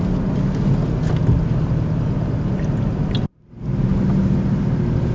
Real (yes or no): yes